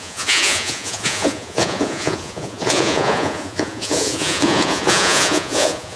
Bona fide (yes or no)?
no